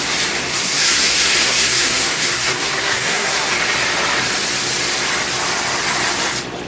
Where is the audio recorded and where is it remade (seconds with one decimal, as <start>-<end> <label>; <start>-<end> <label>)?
0.0-0.5 recorded; 0.5-3.5 remade; 3.5-6.7 recorded